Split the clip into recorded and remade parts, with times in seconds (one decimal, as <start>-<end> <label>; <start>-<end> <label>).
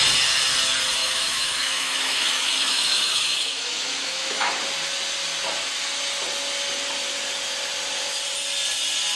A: 0.0-1.0 recorded; 1.0-4.5 remade; 4.5-9.2 recorded